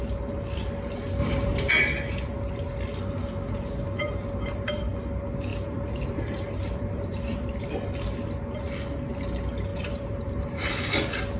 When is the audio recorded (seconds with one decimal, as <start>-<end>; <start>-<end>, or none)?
0.0-1.2; 1.7-5.5; 7.5-9.7; 10.9-11.4